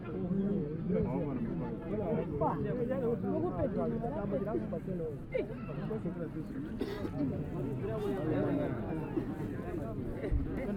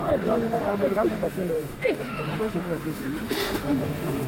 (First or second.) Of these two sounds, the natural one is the first